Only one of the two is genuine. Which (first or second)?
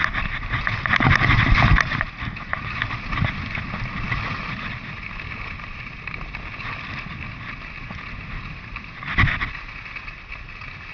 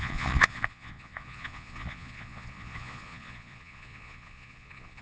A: first